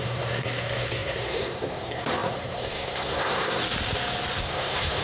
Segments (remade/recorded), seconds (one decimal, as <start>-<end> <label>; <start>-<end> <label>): 0.0-3.6 remade; 3.6-4.4 recorded; 4.4-5.0 remade